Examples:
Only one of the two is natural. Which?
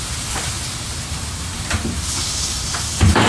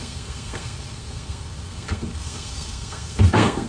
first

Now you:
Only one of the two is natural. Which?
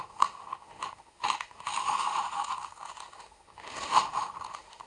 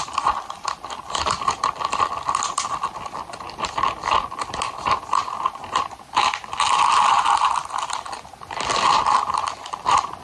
second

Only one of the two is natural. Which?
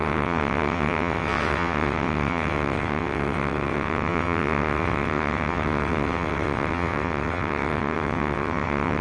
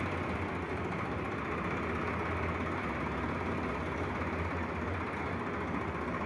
second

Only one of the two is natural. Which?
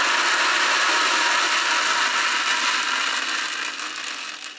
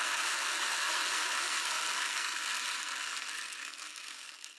first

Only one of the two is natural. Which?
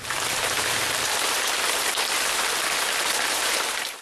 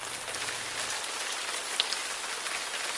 second